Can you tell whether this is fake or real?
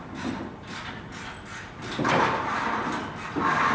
real